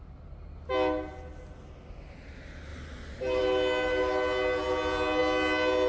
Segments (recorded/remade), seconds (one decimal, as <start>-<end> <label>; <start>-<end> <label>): 0.0-5.9 recorded